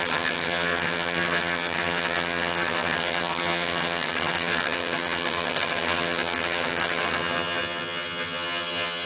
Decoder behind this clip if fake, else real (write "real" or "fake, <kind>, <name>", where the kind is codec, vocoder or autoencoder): fake, vocoder, HiFi-GAN